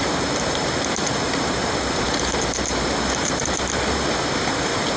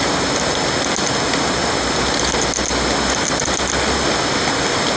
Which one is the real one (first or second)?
second